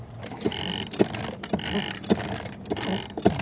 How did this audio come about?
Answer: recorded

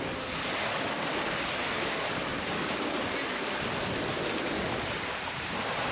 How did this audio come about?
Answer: recorded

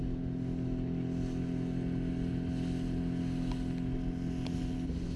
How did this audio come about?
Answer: recorded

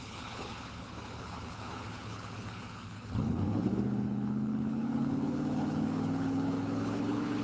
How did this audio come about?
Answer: remade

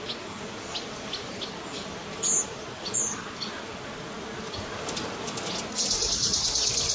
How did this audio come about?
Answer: recorded